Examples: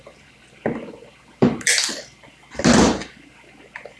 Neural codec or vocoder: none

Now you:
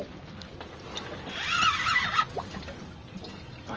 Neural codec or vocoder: none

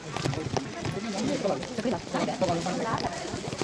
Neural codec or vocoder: none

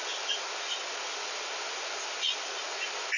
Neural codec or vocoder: none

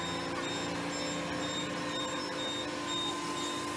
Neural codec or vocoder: none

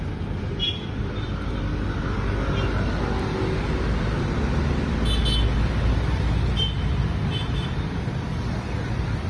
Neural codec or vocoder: none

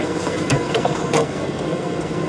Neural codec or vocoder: codec, SNAC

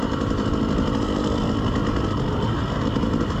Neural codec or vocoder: none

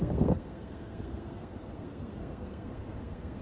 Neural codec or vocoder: codec, SNAC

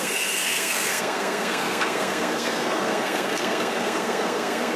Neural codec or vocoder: codec, SNAC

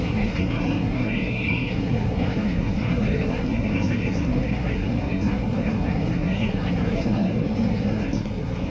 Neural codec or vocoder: codec, SNAC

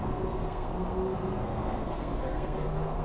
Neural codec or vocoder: codec, SNAC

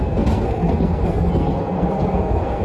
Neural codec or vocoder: codec, SNAC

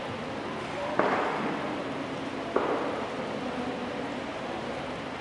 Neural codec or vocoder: none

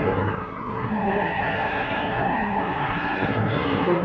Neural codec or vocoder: codec, SNAC